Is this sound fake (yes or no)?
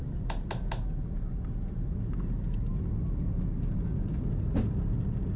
no